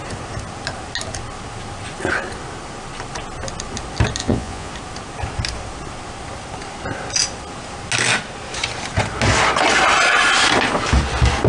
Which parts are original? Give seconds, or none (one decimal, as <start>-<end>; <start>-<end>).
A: 0.0-4.2; 4.7-11.5